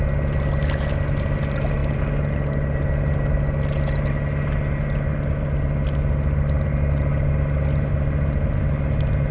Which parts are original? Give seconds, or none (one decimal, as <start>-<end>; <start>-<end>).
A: 0.0-9.3